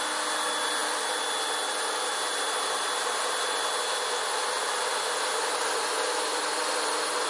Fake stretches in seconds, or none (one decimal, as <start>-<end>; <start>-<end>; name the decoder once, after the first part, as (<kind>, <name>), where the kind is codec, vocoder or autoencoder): 0.8-3.6 (vocoder, BigVGAN v2)